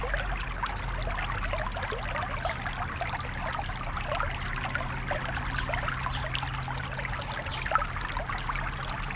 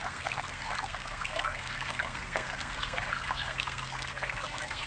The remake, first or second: second